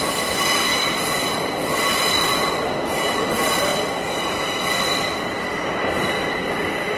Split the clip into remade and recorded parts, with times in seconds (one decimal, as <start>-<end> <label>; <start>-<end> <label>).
0.0-7.0 recorded